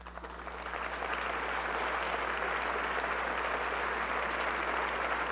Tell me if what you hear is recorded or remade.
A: recorded